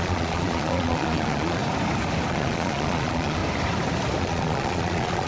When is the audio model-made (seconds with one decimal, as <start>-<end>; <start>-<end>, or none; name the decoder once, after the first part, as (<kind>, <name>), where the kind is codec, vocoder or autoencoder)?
0.0-1.6 (vocoder, Vocos); 2.3-3.4; 4.2-5.3